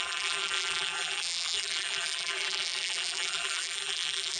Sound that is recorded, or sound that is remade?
remade